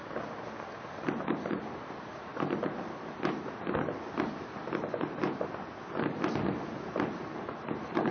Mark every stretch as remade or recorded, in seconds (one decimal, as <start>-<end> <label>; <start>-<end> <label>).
0.0-0.7 recorded; 0.7-2.3 remade; 2.3-7.2 recorded; 7.2-8.1 remade